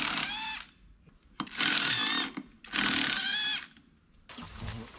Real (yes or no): yes